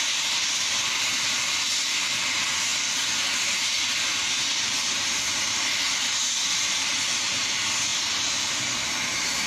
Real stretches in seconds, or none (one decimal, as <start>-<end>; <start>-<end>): 6.4-7.4